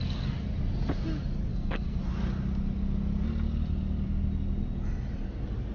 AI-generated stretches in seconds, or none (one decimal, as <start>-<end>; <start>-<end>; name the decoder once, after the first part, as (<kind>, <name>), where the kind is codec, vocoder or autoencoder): 1.5-2.0 (codec, SNAC)